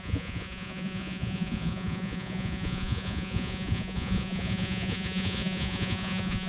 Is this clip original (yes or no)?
no